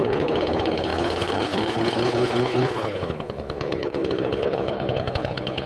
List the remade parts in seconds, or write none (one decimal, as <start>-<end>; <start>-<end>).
0.0-5.7